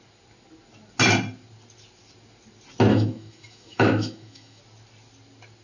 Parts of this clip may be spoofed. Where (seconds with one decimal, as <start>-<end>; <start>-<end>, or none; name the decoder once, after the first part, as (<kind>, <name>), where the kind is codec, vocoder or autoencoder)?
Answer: 2.9-4.6 (autoencoder, DAC-VAE)